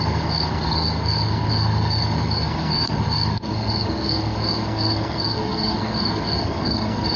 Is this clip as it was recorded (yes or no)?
no